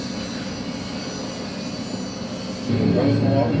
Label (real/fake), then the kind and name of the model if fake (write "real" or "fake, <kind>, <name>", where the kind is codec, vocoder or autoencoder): real